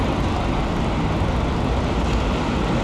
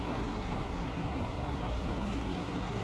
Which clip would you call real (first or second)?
first